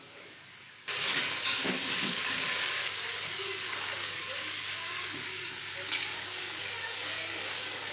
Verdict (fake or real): fake